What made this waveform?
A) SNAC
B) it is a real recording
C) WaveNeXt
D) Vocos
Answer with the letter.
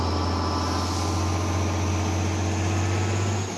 B